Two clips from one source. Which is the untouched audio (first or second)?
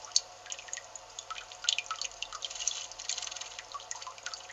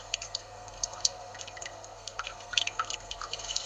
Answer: first